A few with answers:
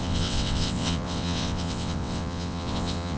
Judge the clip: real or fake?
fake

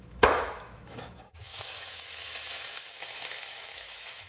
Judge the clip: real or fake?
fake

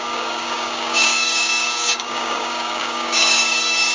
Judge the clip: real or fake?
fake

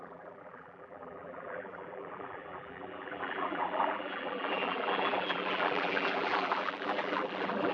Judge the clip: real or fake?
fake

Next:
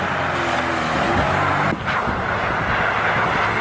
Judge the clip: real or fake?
real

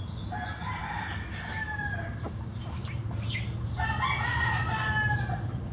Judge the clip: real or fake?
real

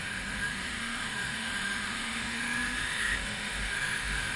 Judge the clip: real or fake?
fake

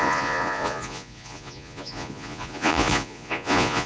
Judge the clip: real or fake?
fake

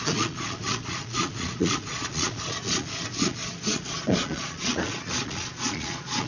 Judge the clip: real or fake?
fake